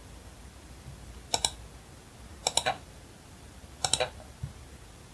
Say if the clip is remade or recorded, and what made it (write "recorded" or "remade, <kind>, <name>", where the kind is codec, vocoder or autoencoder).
recorded